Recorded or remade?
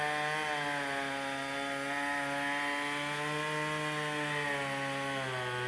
recorded